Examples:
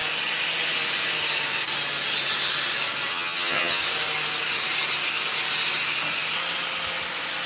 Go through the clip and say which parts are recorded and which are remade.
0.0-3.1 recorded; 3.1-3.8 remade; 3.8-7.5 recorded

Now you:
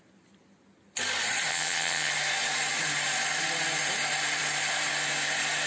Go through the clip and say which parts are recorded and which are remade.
0.0-1.5 recorded; 1.5-2.1 remade; 2.1-5.7 recorded

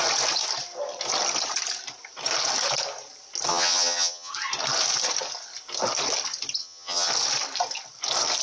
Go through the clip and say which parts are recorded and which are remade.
0.0-3.5 recorded; 3.5-4.3 remade; 4.3-6.6 recorded; 6.6-7.1 remade; 7.1-8.4 recorded

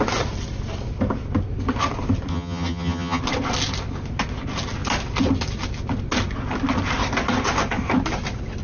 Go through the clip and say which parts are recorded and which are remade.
0.0-2.3 recorded; 2.3-3.2 remade; 3.2-8.6 recorded

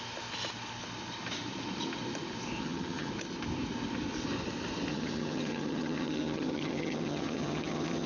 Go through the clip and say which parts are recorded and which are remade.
0.0-2.6 recorded; 2.6-3.1 remade; 3.1-4.9 recorded; 4.9-8.1 remade